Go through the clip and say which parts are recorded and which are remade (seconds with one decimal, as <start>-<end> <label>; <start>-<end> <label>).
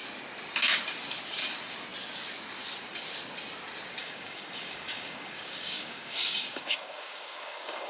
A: 0.0-4.0 recorded; 4.0-7.9 remade